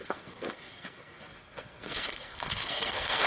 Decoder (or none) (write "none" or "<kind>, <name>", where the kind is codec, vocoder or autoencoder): codec, SNAC